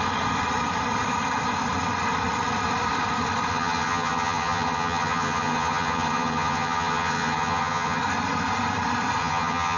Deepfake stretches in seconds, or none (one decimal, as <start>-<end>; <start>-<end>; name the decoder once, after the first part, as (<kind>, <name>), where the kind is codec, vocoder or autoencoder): 3.5-8.0 (vocoder, HiFi-GAN); 9.2-9.8